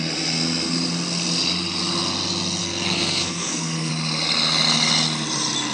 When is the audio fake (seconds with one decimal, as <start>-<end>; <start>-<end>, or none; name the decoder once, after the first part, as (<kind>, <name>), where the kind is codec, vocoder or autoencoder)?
2.6-3.9 (codec, SNAC)